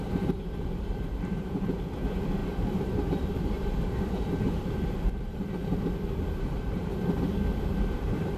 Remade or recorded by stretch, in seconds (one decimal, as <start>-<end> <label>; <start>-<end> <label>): 0.0-5.3 remade; 5.3-6.4 recorded; 6.4-6.9 remade; 6.9-7.8 recorded; 7.8-8.4 remade